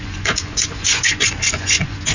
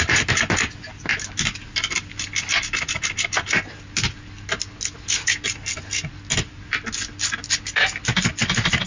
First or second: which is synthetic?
first